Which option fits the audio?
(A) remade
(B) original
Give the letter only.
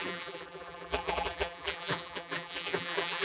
A